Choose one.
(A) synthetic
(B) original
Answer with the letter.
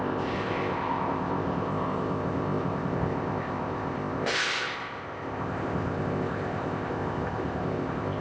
A